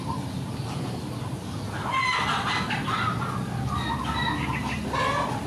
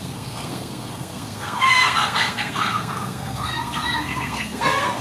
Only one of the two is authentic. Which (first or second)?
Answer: first